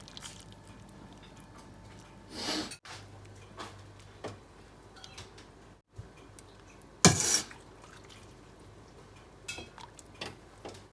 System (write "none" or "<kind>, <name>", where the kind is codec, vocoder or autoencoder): none